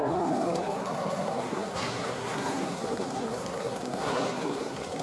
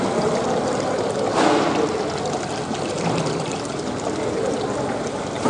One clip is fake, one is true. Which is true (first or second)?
second